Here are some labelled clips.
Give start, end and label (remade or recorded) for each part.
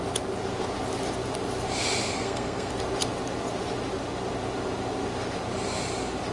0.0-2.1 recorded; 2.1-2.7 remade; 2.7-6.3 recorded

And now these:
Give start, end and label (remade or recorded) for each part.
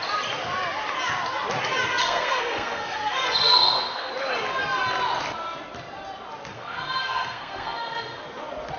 0.0-2.0 recorded; 2.0-4.1 remade; 4.1-6.5 recorded; 6.5-8.2 remade; 8.2-8.8 recorded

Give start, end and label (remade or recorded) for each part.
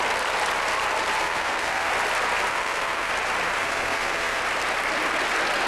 0.0-1.2 recorded; 1.2-1.9 remade; 1.9-2.5 recorded; 2.5-3.1 remade; 3.1-3.6 recorded; 3.6-4.4 remade; 4.4-5.7 recorded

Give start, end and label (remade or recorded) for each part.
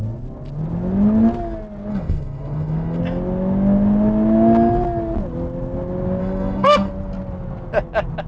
0.0-1.9 recorded; 1.9-3.0 remade; 3.0-6.2 recorded; 6.2-6.9 remade; 6.9-8.3 recorded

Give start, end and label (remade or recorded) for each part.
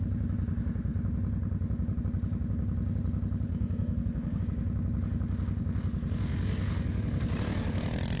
0.0-3.5 recorded; 3.5-4.4 remade; 4.4-8.2 recorded